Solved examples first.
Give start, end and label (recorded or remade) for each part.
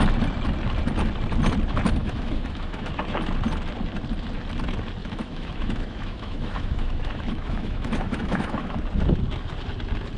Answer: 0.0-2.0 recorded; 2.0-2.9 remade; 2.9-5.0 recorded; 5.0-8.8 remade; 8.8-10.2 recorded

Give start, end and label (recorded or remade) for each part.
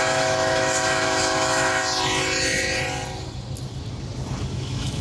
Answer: 0.0-1.8 remade; 1.8-4.5 recorded; 4.5-5.0 remade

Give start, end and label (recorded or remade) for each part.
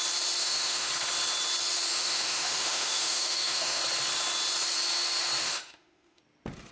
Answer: 0.0-0.4 recorded; 0.4-0.9 remade; 0.9-1.9 recorded; 1.9-3.8 remade; 3.8-5.4 recorded; 5.4-6.2 remade; 6.2-6.7 recorded